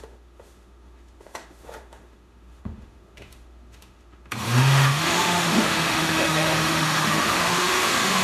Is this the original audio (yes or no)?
no